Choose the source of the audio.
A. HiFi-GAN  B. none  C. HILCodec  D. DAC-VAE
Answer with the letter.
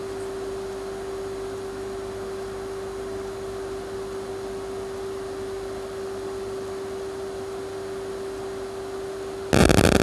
B